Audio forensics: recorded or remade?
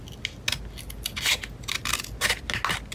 recorded